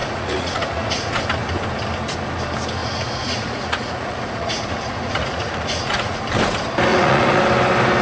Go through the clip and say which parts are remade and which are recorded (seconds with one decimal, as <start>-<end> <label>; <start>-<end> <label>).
0.0-1.2 remade; 1.2-2.8 recorded; 2.8-6.2 remade; 6.2-6.9 recorded; 6.9-7.4 remade; 7.4-8.0 recorded